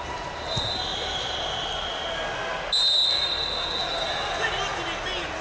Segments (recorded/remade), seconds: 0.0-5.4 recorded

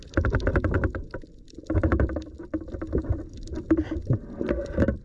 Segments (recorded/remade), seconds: 0.0-5.0 recorded